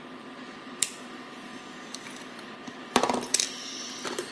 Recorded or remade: remade